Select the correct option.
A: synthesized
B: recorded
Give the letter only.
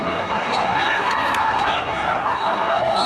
A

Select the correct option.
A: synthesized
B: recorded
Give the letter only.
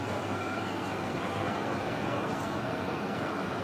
A